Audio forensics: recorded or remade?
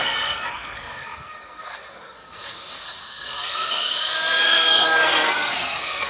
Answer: remade